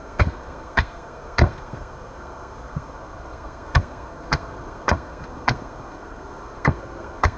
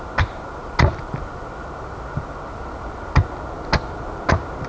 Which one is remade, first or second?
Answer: first